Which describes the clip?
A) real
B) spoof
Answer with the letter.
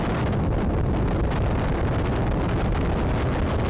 A